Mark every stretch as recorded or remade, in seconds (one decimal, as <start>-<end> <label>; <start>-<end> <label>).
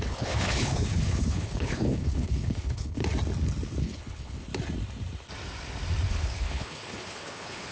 0.0-3.0 remade; 3.0-3.8 recorded; 3.8-4.5 remade; 4.5-6.1 recorded; 6.1-7.7 remade